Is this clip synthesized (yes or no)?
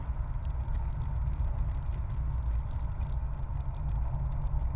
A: no